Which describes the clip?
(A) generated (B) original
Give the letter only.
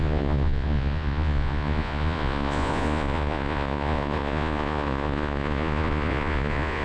A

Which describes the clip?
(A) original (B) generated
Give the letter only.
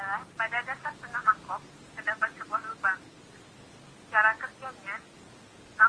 A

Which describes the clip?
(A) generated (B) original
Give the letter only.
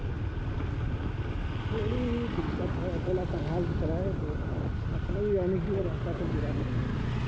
B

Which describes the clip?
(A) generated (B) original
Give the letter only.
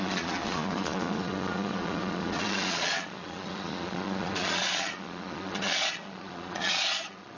A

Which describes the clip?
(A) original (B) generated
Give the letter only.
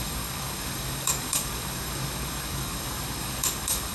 B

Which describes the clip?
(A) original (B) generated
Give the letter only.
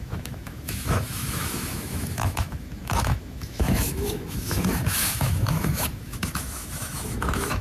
B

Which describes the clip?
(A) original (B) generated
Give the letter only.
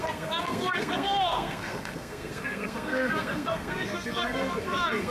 B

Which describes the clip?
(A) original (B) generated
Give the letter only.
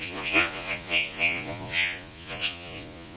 B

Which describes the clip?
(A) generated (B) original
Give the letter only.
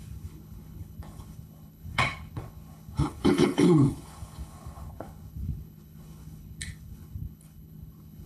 A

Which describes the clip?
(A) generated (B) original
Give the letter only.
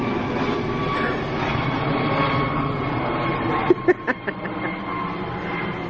B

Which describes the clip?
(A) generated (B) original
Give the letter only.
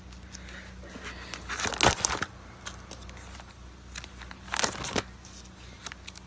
B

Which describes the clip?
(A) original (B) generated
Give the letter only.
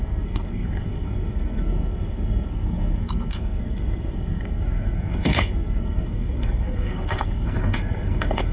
B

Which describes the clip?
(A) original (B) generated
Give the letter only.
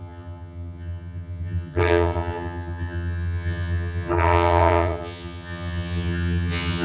B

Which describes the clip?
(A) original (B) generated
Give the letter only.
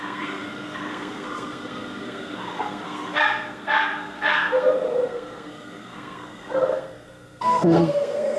B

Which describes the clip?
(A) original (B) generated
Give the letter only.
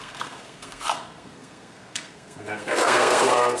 B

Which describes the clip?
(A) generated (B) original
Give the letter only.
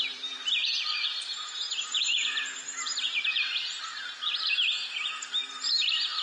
A